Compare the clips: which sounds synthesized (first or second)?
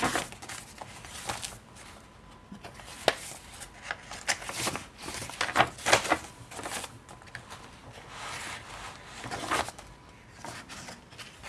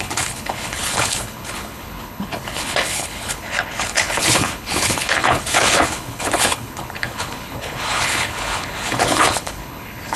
second